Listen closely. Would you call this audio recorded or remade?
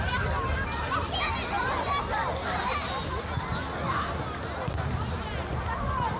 recorded